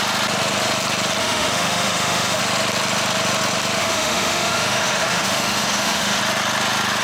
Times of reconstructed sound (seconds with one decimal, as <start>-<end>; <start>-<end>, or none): 1.2-2.4; 3.8-6.2